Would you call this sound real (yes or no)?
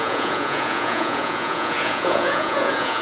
no